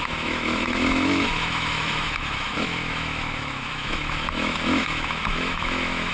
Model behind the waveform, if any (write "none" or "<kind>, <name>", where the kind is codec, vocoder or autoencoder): autoencoder, DAC-VAE